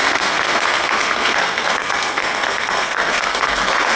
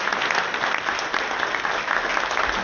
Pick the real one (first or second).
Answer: second